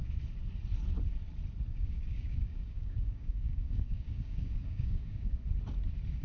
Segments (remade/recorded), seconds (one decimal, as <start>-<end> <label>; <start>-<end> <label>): 0.0-1.7 recorded; 1.7-5.4 remade; 5.4-6.2 recorded